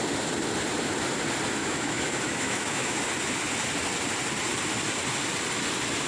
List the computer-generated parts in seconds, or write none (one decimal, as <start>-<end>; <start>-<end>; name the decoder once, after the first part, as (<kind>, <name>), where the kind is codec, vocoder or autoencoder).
1.6-3.0 (autoencoder, DAC-VAE)